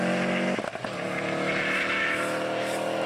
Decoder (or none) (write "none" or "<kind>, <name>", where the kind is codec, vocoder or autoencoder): none